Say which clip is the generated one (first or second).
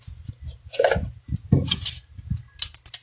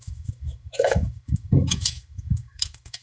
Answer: second